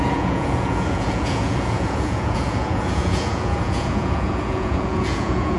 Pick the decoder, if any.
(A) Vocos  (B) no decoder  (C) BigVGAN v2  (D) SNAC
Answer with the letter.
A